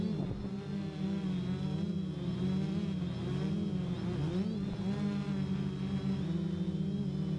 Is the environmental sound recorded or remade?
recorded